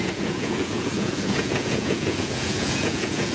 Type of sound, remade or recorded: remade